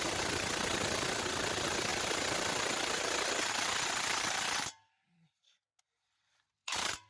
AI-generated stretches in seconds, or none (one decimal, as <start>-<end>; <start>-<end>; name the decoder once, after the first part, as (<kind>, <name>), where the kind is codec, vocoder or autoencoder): 6.6-7.1 (vocoder, BigVGAN v2)